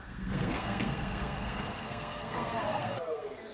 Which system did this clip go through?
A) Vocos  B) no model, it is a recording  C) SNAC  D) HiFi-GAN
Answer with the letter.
C